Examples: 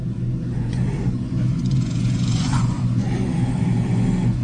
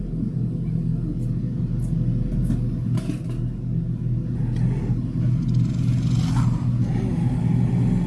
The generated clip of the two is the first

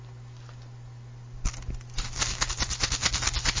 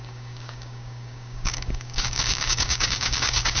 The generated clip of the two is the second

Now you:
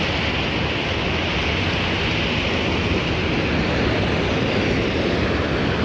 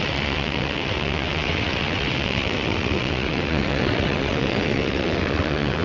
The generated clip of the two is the second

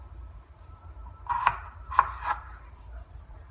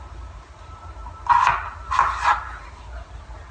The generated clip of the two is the first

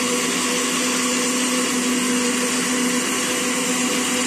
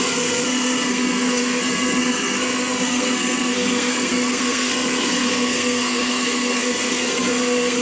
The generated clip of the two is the second